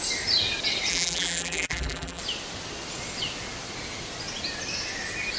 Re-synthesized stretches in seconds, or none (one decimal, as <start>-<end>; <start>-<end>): 0.9-2.2